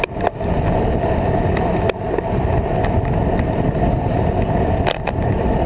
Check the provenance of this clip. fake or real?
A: real